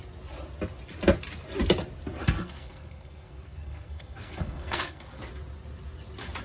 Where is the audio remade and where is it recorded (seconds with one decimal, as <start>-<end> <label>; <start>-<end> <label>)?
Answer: 0.0-2.2 recorded; 2.2-5.2 remade; 5.2-6.4 recorded